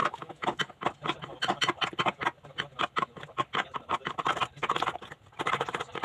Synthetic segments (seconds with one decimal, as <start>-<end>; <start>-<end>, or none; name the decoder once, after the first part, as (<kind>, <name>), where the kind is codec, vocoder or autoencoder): 0.0-0.6 (autoencoder, DAC-VAE)